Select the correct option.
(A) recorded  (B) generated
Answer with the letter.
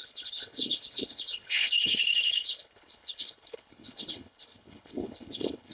B